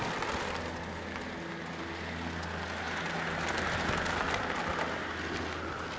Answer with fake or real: real